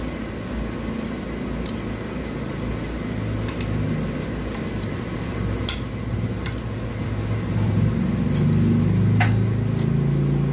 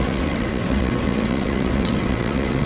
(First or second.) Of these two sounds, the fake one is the second